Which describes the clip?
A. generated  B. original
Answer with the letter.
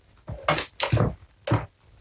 B